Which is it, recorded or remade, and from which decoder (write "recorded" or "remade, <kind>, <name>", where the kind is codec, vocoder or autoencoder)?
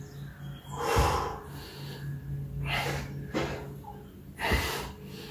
recorded